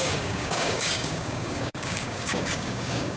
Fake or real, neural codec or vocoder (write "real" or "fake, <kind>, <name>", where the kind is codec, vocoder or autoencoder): fake, codec, DAC